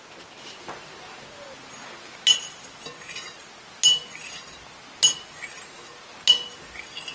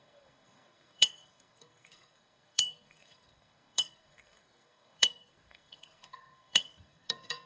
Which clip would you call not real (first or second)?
second